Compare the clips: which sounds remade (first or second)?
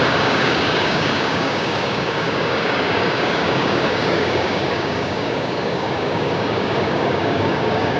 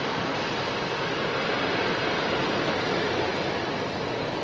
first